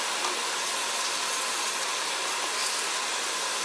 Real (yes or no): yes